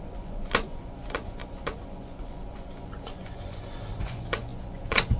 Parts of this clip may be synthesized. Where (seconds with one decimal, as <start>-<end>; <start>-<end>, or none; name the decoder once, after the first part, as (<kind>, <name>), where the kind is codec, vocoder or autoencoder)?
0.0-5.2 (vocoder, Vocos)